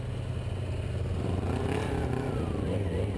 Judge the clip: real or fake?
real